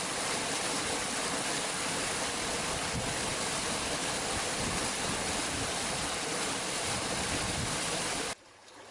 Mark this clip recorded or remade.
recorded